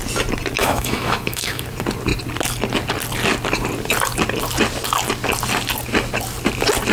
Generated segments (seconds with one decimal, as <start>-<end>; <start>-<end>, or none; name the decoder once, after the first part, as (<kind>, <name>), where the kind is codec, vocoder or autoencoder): 0.6-1.6 (autoencoder, DAC-VAE)